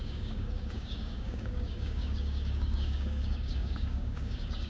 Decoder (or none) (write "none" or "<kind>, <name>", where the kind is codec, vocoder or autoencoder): codec, DAC